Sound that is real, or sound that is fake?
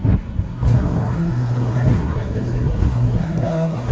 fake